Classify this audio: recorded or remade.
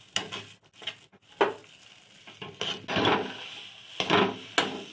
recorded